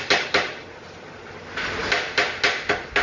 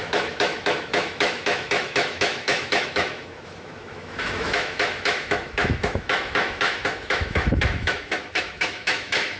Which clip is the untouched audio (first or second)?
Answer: first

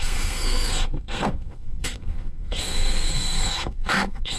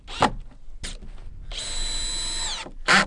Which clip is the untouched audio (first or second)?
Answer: second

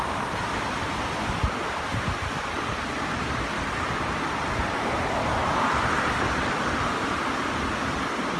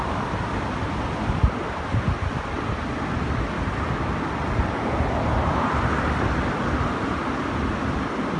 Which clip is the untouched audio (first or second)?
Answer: second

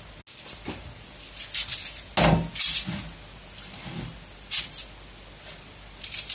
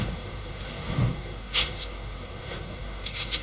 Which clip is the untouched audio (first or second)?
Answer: first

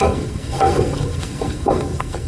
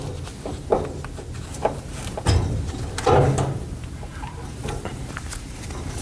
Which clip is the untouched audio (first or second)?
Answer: second